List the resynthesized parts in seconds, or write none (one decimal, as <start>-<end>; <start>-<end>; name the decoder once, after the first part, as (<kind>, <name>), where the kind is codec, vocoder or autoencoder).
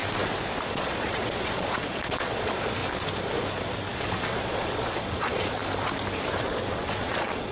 0.7-2.8 (vocoder, Vocos); 3.9-5.6; 6.4-7.5